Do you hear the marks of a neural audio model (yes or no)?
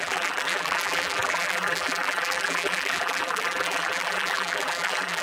yes